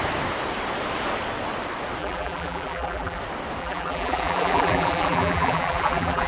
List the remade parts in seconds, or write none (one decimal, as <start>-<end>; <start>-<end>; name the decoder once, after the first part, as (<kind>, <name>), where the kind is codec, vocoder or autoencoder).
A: 2.0-3.2 (vocoder, BigVGAN v2); 3.6-6.3